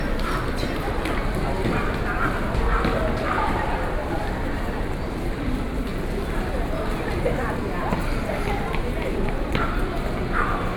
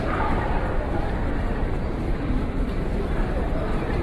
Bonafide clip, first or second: first